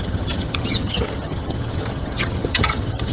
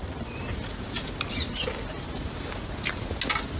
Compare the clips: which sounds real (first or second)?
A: second